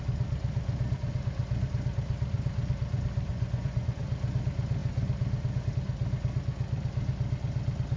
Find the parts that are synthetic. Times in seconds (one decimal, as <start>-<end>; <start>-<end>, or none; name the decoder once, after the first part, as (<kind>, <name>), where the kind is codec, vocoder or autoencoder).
3.3-4.0 (vocoder, Vocos)